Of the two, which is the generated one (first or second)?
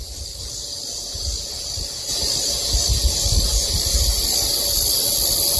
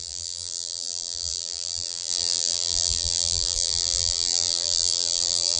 second